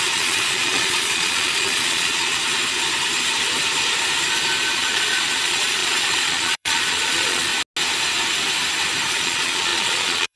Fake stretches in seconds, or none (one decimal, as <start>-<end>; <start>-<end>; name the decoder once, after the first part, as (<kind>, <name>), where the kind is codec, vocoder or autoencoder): 0.0-2.4 (vocoder, Vocos); 4.7-7.5; 9.1-10.4